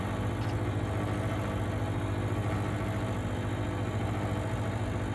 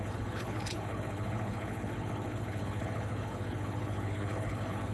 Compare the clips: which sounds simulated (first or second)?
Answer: second